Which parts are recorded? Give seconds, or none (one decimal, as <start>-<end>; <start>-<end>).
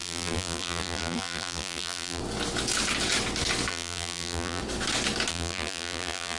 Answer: 2.2-3.7; 4.6-5.3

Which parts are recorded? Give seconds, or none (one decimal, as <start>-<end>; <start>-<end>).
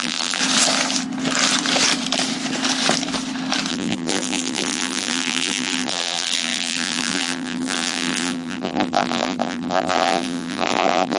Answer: 0.4-3.7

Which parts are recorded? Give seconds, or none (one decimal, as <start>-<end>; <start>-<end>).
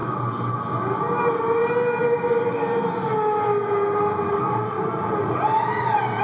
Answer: 0.0-1.2; 2.0-4.3